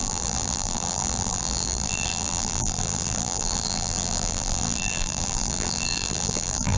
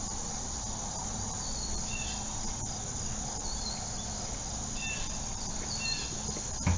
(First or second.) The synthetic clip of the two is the first